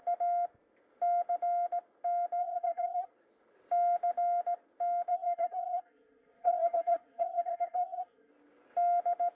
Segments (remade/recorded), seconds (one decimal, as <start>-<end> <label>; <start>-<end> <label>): 0.0-2.4 recorded; 2.4-3.1 remade; 3.1-5.1 recorded; 5.1-8.3 remade; 8.3-9.3 recorded